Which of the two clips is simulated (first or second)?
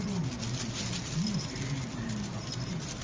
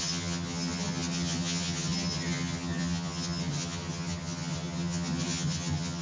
second